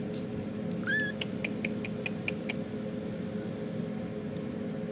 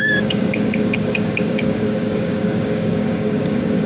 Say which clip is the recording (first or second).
first